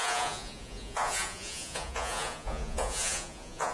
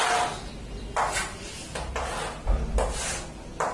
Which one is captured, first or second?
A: second